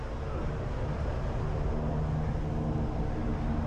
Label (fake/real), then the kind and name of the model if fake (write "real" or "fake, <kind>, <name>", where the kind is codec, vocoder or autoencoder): real